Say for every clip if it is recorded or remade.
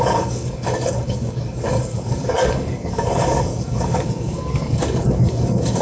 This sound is remade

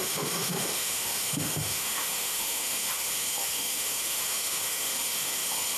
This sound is remade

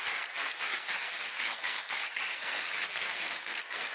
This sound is remade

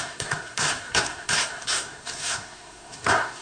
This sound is remade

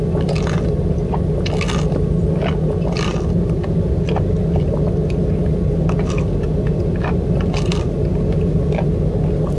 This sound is recorded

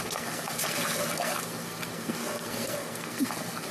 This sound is remade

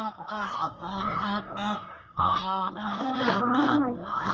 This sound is remade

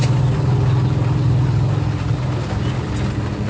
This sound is recorded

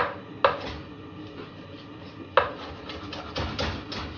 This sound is recorded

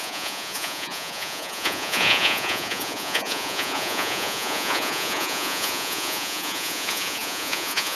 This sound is remade